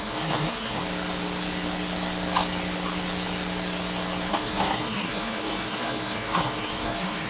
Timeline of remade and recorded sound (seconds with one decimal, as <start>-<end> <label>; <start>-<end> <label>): 0.0-0.8 remade; 0.8-4.3 recorded; 4.3-7.3 remade